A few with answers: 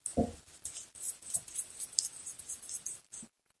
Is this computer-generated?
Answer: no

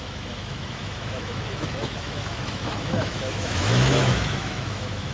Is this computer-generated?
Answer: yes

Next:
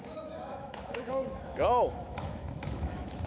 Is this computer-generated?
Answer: yes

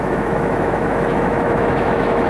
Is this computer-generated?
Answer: yes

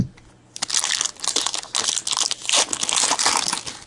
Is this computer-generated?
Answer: no